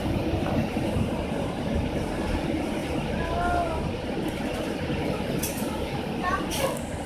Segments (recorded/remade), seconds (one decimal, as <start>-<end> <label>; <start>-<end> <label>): 0.0-0.6 remade; 0.6-1.6 recorded; 1.6-2.8 remade; 2.8-5.0 recorded; 5.0-7.1 remade